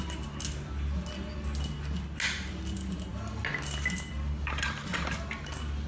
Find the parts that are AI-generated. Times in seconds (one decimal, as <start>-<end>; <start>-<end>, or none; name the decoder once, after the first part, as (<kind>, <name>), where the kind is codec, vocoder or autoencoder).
none